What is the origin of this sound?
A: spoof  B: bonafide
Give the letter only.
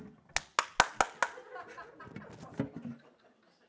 B